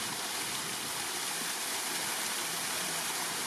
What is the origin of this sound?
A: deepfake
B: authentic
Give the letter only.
B